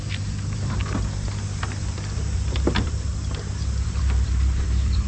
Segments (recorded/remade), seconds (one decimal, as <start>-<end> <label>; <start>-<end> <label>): 0.0-0.8 remade; 0.8-1.6 recorded; 1.6-3.1 remade; 3.1-3.7 recorded; 3.7-5.1 remade